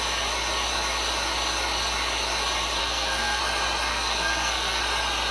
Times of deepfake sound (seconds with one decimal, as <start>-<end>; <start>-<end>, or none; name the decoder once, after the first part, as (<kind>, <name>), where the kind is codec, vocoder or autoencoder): 2.8-3.4 (codec, SNAC); 3.9-4.8

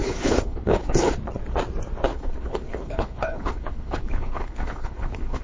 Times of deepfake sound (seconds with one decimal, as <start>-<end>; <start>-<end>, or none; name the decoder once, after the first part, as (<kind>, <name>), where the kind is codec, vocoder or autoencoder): 0.0-1.1 (codec, HILCodec); 2.1-5.4

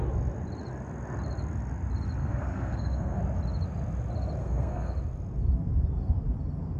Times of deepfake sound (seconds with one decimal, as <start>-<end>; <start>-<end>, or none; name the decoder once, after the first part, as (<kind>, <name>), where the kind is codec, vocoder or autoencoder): 2.2-3.2 (codec, SNAC); 4.4-4.9

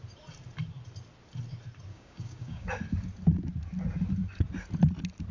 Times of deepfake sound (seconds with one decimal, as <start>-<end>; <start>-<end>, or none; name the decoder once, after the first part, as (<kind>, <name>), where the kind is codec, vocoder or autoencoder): 1.9-2.7 (codec, DAC)

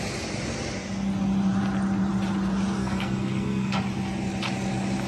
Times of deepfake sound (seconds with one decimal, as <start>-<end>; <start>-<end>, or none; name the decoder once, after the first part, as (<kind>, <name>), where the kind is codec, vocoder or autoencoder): 2.8-3.8 (codec, SNAC)

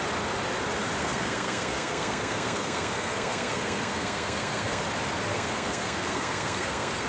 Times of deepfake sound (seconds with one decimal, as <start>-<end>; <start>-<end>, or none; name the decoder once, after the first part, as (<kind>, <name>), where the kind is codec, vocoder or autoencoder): 1.0-4.8 (codec, SNAC); 5.3-7.1

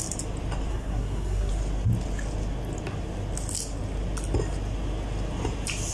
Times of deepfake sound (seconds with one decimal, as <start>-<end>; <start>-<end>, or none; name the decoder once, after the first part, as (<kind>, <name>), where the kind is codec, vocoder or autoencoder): 0.7-1.5 (codec, SNAC)